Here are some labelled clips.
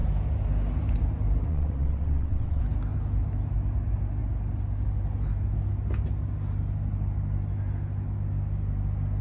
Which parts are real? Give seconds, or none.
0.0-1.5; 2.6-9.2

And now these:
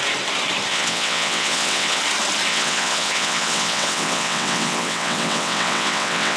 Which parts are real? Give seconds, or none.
0.0-0.7; 2.0-2.5